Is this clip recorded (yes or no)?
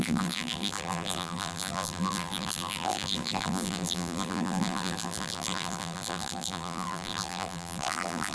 no